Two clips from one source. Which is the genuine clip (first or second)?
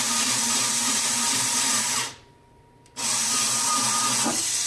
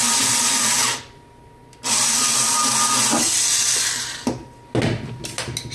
second